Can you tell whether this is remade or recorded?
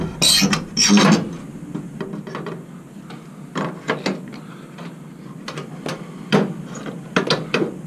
recorded